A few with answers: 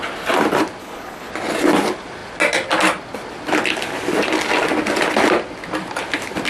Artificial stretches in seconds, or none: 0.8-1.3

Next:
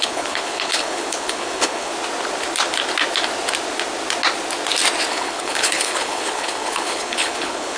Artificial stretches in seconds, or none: 0.0-1.9; 5.1-7.8

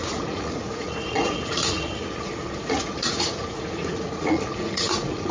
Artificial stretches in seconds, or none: 0.0-5.3

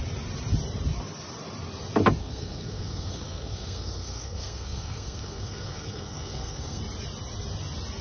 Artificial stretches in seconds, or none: 2.2-6.8

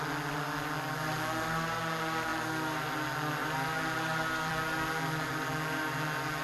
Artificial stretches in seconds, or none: none

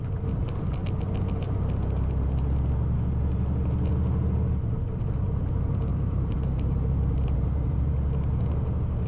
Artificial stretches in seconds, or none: 5.9-7.9

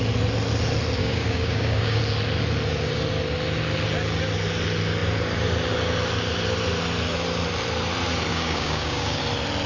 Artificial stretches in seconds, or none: 1.0-2.0; 8.3-9.2

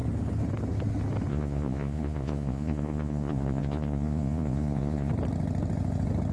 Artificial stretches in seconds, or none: 1.3-5.1